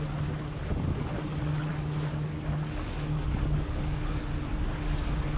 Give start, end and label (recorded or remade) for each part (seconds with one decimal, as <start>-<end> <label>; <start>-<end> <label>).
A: 0.0-1.7 recorded; 1.7-4.2 remade; 4.2-5.4 recorded